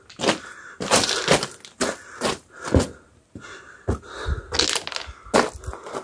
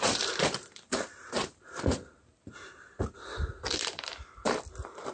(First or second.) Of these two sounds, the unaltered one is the first